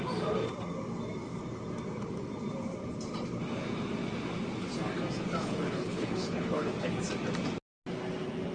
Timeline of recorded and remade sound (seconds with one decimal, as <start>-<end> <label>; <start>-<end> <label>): 0.0-5.4 recorded; 5.4-6.7 remade; 6.7-8.5 recorded